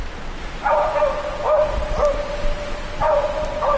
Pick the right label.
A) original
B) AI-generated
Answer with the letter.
A